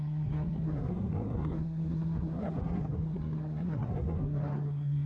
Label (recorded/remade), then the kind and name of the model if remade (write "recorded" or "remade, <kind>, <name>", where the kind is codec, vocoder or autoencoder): remade, codec, SNAC